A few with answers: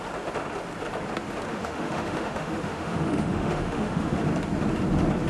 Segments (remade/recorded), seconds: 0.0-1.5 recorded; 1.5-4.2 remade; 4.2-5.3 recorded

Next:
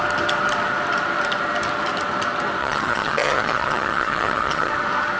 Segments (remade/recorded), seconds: 0.0-2.6 recorded; 2.6-4.7 remade; 4.7-5.2 recorded

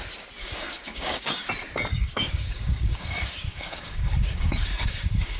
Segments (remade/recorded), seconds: 0.0-0.4 recorded; 0.4-1.5 remade; 1.5-1.9 recorded; 1.9-5.4 remade

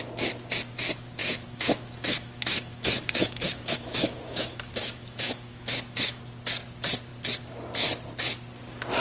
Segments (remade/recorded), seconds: 0.0-1.2 recorded; 1.2-6.2 remade; 6.2-9.0 recorded

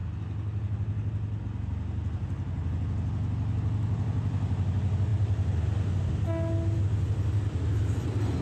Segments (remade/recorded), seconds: 0.0-5.1 recorded; 5.1-5.6 remade; 5.6-8.4 recorded

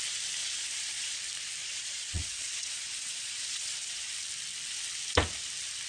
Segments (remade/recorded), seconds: 0.0-0.4 recorded; 0.4-1.2 remade; 1.2-1.6 recorded; 1.6-4.1 remade; 4.1-5.9 recorded